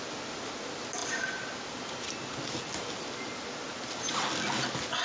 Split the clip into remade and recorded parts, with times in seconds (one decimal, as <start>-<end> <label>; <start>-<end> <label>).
0.0-5.0 recorded